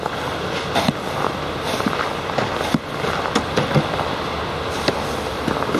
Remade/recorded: recorded